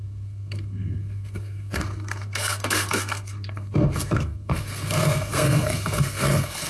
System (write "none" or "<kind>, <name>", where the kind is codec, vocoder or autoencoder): codec, SNAC